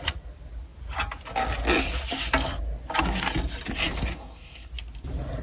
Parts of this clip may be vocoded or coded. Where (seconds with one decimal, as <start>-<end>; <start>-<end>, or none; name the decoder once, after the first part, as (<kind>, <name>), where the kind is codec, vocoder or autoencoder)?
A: 4.1-4.7 (codec, SNAC)